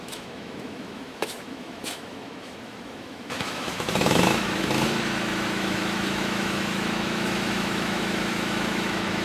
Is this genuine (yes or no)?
no